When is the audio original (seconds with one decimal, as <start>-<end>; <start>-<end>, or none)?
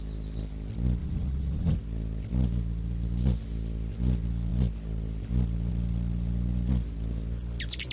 0.0-1.0; 1.8-7.9